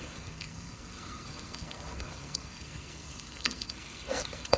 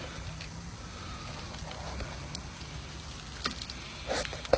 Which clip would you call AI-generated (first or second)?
first